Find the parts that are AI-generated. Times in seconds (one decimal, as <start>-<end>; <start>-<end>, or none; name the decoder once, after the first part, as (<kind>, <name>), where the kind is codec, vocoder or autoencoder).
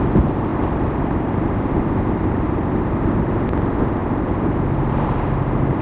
0.5-2.9 (vocoder, BigVGAN v2)